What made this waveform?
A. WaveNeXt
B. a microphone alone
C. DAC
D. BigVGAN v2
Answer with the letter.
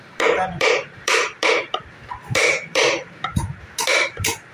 D